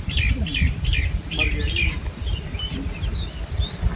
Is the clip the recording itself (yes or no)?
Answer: yes